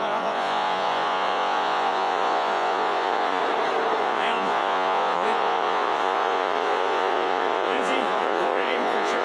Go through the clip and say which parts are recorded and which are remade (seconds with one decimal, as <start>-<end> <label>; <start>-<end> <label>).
0.0-3.4 remade; 3.4-4.0 recorded; 4.0-9.2 remade